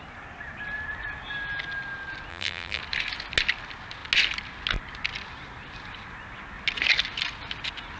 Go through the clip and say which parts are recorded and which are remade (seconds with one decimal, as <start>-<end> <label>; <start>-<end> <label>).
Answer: 0.0-2.3 recorded; 2.3-2.8 remade; 2.8-8.0 recorded